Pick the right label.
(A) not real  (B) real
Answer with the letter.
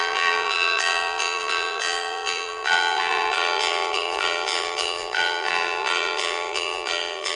A